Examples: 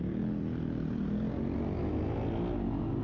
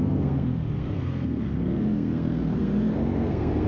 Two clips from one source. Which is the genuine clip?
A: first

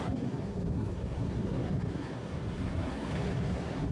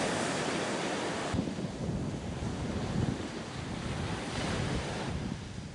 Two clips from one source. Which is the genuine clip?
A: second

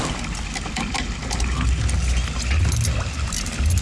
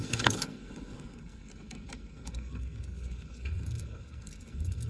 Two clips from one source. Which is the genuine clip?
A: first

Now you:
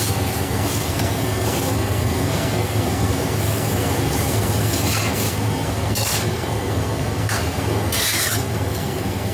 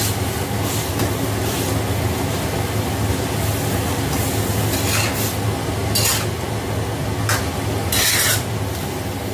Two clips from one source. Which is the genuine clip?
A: second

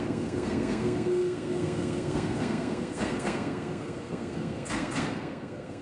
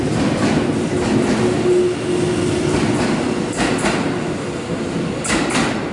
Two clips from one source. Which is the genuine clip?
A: second